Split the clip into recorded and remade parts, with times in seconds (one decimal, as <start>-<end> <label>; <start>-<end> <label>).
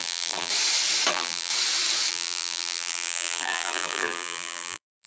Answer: 0.0-0.5 remade; 0.5-1.1 recorded; 1.1-1.5 remade; 1.5-2.1 recorded; 2.1-5.1 remade